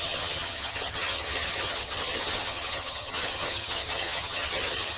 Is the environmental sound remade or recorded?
remade